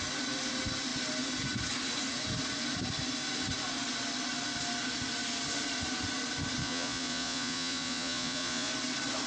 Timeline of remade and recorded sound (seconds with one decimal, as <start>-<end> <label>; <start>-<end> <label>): 0.0-6.6 recorded; 6.6-8.7 remade; 8.7-9.3 recorded